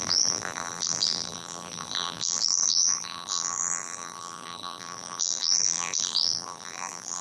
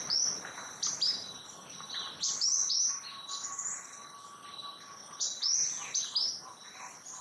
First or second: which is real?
second